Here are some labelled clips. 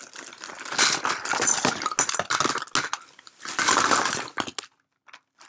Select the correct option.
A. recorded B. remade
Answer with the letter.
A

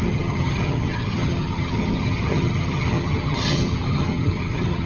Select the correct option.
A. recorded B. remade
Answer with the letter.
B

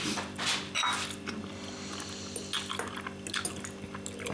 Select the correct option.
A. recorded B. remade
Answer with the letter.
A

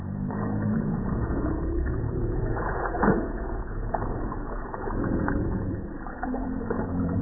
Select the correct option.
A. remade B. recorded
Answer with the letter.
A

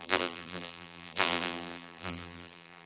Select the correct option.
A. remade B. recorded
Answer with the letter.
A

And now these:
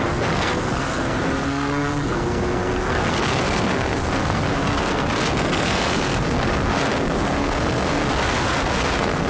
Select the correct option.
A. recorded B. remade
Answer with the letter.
B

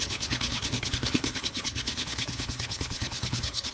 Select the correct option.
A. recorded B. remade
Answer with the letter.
B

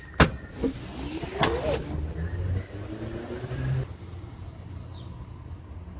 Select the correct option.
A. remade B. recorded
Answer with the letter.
B